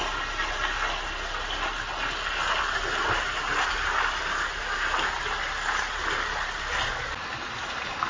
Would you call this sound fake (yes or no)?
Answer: no